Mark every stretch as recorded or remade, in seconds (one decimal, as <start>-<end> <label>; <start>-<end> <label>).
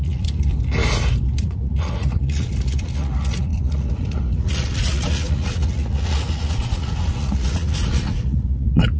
0.0-0.5 remade; 0.5-1.4 recorded; 1.4-9.0 remade